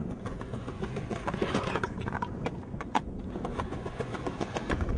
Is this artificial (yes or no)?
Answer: yes